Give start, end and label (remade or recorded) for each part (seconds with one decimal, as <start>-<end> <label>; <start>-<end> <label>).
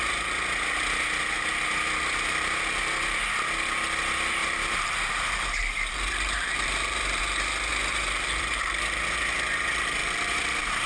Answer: 0.0-4.4 recorded; 4.4-7.2 remade; 7.2-7.7 recorded; 7.7-9.0 remade; 9.0-10.0 recorded; 10.0-10.9 remade